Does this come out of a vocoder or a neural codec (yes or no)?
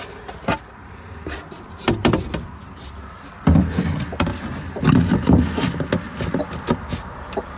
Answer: no